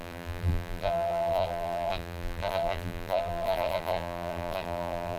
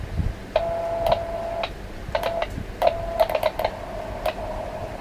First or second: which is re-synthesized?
first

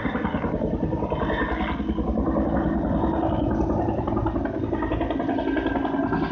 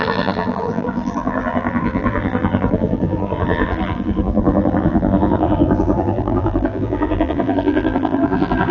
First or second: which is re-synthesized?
second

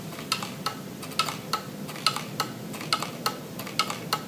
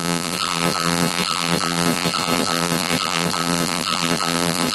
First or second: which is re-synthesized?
second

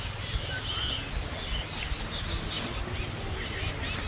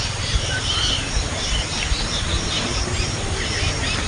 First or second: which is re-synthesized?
second